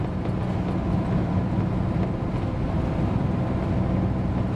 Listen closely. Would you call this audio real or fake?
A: real